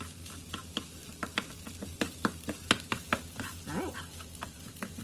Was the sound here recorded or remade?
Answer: recorded